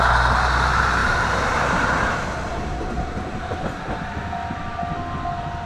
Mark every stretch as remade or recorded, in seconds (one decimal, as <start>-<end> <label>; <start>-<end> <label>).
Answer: 0.0-1.0 recorded; 1.0-3.9 remade; 3.9-5.7 recorded